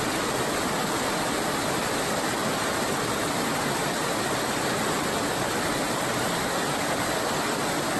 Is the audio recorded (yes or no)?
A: yes